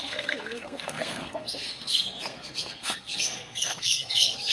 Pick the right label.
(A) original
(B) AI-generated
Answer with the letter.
B